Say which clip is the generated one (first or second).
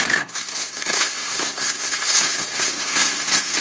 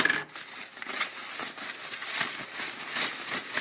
first